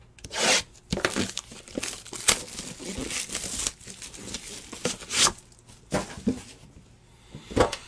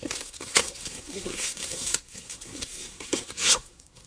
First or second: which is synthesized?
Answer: second